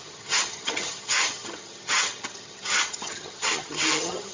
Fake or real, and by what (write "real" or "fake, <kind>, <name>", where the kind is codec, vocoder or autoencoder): fake, vocoder, HiFi-GAN